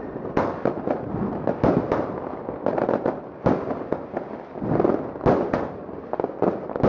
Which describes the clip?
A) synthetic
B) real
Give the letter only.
B